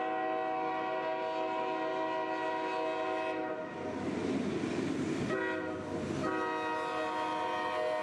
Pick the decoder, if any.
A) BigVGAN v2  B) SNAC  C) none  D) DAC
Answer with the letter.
C